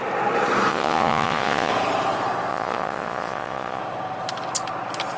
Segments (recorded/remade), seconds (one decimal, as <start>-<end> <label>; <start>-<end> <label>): 0.0-0.7 recorded; 0.7-1.7 remade; 1.7-2.5 recorded; 2.5-3.8 remade; 3.8-5.2 recorded

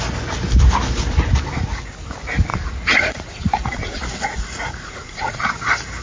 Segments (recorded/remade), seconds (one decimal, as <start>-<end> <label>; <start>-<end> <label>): 0.0-2.5 recorded; 2.5-5.4 remade; 5.4-6.0 recorded

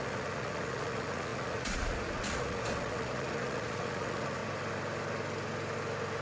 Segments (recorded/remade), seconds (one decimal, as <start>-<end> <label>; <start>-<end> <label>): 0.0-4.4 remade; 4.4-6.2 recorded

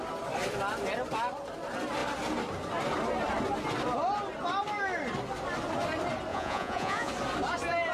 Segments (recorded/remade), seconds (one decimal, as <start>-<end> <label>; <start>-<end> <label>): 0.0-6.3 recorded; 6.3-7.1 remade; 7.1-7.9 recorded

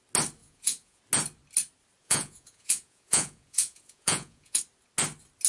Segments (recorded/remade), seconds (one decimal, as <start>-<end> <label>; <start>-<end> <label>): 0.0-0.4 recorded; 0.4-1.0 remade; 1.0-2.0 recorded; 2.0-4.6 remade; 4.6-5.5 recorded

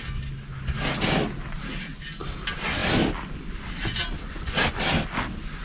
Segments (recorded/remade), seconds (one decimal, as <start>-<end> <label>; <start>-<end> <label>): 0.0-5.6 recorded